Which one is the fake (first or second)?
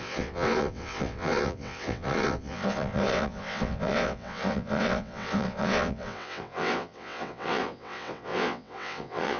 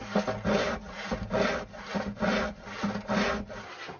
first